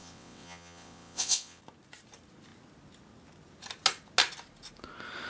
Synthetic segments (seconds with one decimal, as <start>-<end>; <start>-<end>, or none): 0.0-1.6